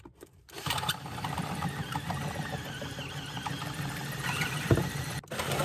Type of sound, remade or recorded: remade